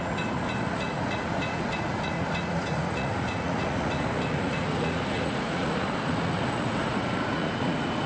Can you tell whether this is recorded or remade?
remade